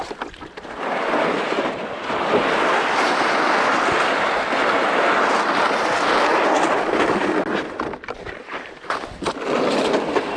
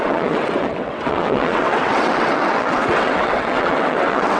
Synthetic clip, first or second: second